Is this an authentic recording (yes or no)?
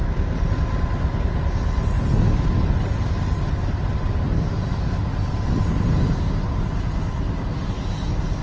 yes